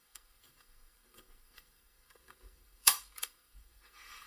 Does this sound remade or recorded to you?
remade